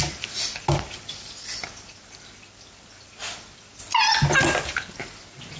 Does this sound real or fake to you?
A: real